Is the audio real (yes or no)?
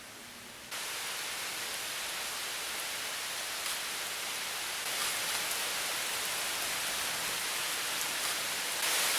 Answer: yes